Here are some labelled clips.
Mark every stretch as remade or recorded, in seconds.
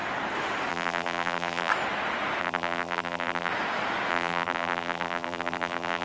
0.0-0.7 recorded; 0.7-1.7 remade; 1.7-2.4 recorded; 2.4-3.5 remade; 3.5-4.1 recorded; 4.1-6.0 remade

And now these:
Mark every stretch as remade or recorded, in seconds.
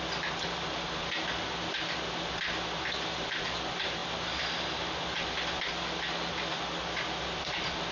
0.0-7.9 recorded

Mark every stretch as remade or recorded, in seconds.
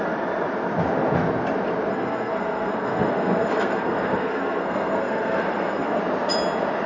0.0-1.9 recorded; 1.9-6.0 remade; 6.0-6.9 recorded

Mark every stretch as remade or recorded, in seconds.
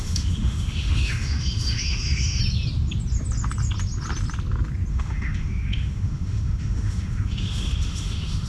0.0-2.4 remade; 2.4-4.9 recorded; 4.9-8.5 remade